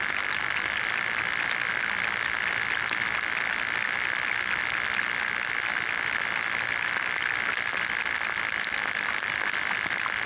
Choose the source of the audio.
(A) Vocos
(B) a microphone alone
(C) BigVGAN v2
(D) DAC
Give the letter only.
B